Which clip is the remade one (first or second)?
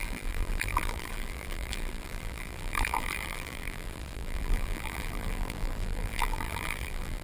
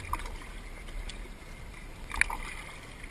first